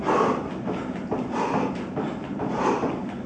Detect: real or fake fake